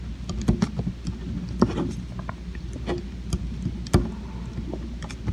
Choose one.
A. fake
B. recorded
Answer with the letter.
B